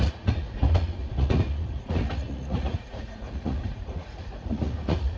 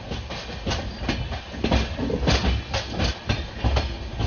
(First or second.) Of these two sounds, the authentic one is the second